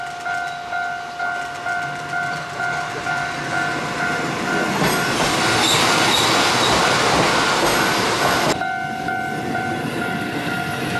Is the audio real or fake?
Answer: real